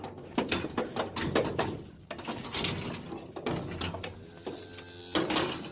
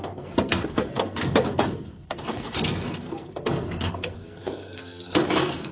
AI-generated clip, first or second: second